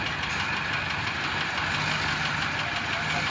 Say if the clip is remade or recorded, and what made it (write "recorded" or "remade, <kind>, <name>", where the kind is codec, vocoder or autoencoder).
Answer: recorded